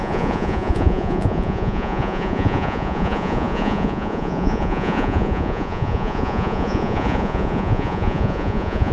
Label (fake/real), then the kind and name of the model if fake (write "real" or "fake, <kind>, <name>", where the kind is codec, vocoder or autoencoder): fake, vocoder, Vocos